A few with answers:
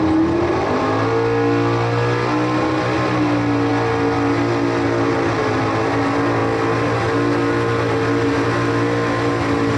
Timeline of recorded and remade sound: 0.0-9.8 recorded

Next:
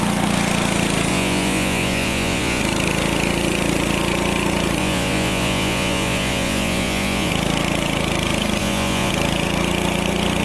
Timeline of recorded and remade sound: 0.0-1.1 recorded; 1.1-2.6 remade; 2.6-4.8 recorded; 4.8-7.3 remade; 7.3-8.6 recorded; 8.6-9.1 remade; 9.1-10.4 recorded

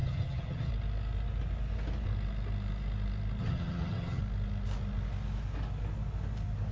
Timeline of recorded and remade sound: 0.0-0.7 remade; 0.7-3.4 recorded; 3.4-4.2 remade; 4.2-6.7 recorded

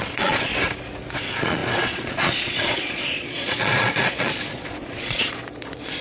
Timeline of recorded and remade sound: 0.0-0.5 remade; 0.5-1.2 recorded; 1.2-6.0 remade

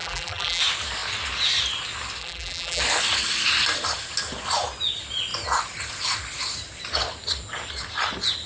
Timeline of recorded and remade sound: 0.0-0.6 remade; 0.6-2.2 recorded; 2.2-2.8 remade; 2.8-8.5 recorded

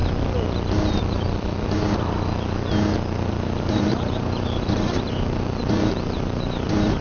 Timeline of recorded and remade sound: 0.0-3.3 recorded; 3.3-7.0 remade

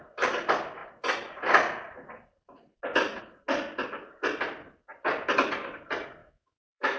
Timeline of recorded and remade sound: 0.0-6.2 recorded; 6.2-7.0 remade